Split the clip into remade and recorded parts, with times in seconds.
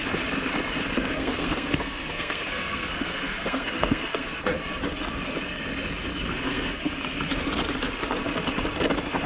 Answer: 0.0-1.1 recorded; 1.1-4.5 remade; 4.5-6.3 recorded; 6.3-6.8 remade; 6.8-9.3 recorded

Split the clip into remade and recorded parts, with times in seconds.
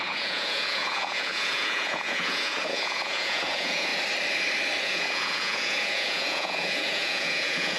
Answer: 0.0-3.9 remade; 3.9-4.8 recorded; 4.8-7.8 remade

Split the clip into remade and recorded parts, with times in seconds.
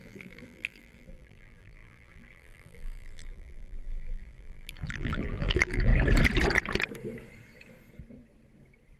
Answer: 0.0-5.9 remade; 5.9-9.0 recorded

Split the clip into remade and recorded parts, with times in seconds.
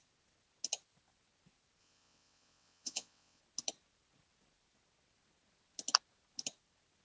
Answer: 0.0-1.8 recorded; 1.8-3.4 remade; 3.4-7.0 recorded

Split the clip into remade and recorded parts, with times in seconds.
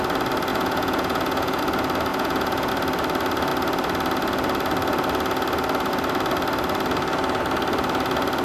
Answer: 0.0-0.5 recorded; 0.5-1.6 remade; 1.6-2.1 recorded; 2.1-2.7 remade; 2.7-8.4 recorded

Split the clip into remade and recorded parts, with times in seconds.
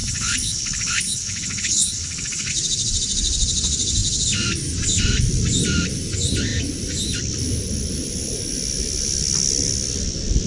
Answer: 0.0-2.5 remade; 2.5-10.5 recorded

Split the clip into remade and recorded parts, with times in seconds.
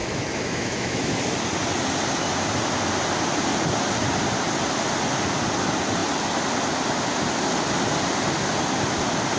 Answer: 0.0-1.2 remade; 1.2-9.4 recorded